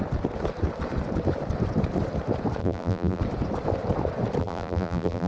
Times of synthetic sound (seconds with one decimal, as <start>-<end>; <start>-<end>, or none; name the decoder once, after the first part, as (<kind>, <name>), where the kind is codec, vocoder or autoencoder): 2.6-3.2 (vocoder, BigVGAN v2); 4.4-5.3